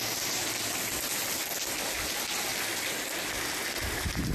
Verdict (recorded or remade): recorded